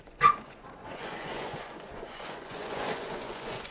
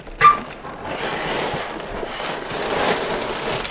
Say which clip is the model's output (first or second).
first